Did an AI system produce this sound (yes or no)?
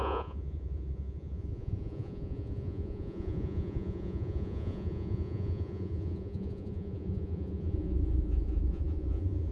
yes